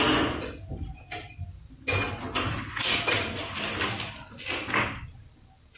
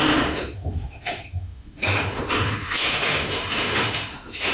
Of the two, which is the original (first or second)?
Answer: first